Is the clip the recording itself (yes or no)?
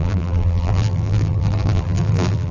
no